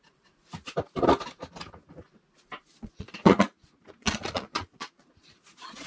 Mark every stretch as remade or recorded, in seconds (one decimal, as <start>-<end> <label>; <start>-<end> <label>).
0.0-2.7 recorded; 2.7-5.9 remade